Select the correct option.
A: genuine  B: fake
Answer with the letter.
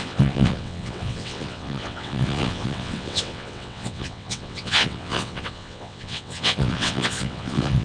B